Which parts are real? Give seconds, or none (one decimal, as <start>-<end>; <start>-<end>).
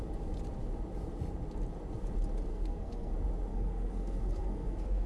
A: 0.0-2.5; 3.1-3.5